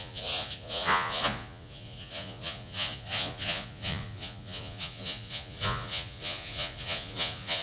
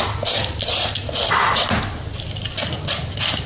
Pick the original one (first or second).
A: second